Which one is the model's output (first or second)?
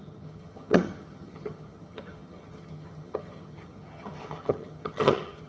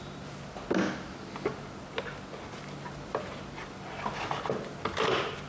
first